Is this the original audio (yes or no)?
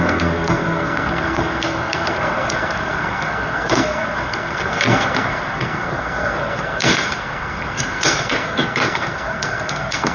no